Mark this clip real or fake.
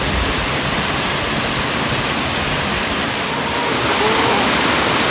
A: real